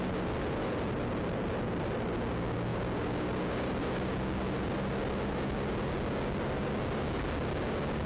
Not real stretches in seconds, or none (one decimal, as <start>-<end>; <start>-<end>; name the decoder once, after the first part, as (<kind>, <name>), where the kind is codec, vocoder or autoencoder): none